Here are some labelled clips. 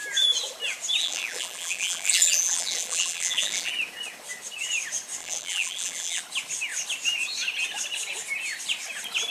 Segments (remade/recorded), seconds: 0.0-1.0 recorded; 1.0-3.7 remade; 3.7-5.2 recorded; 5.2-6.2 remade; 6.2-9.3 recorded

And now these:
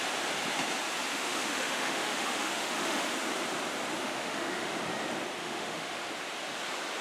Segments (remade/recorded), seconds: 0.0-1.1 recorded; 1.1-3.0 remade; 3.0-4.0 recorded; 4.0-4.8 remade; 4.8-5.4 recorded; 5.4-6.1 remade; 6.1-7.0 recorded

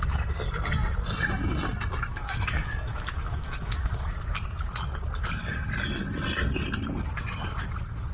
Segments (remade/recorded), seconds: 0.0-2.1 recorded; 2.1-3.9 remade; 3.9-8.1 recorded

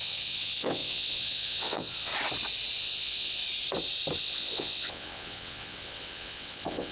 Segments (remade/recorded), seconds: 0.0-2.1 remade; 2.1-2.8 recorded; 2.8-3.4 remade; 3.4-4.2 recorded; 4.2-6.9 remade